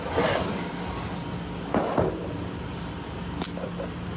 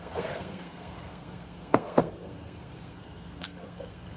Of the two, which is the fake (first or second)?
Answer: second